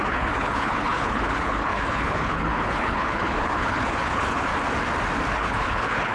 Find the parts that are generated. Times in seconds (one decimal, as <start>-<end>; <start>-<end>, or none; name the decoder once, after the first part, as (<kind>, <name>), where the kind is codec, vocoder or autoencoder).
0.0-4.5 (codec, HILCodec); 5.3-6.1